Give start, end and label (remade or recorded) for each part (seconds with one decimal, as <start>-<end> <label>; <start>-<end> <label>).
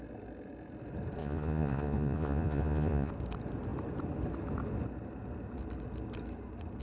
0.0-1.2 recorded; 1.2-3.1 remade; 3.1-6.8 recorded